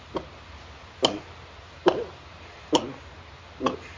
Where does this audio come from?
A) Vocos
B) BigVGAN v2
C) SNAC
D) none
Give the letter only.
D